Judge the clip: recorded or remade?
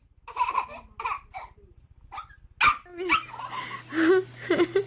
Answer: recorded